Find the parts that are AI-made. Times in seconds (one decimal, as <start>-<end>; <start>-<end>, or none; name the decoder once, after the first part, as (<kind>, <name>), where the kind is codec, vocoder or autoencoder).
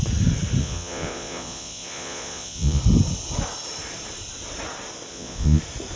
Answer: 0.6-2.8 (vocoder, Vocos); 5.1-5.6